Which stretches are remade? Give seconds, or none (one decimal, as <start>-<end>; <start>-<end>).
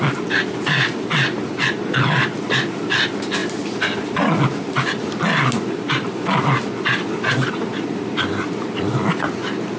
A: 0.0-3.4; 4.1-9.8